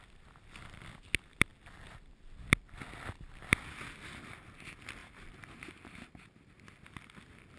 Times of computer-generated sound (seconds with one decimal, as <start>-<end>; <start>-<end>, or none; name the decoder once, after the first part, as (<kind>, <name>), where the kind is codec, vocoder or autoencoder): 5.0-6.6 (vocoder, BigVGAN v2)